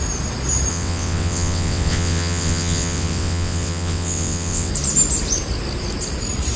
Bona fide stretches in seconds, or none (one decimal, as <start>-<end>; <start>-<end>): 0.0-0.7; 4.7-6.6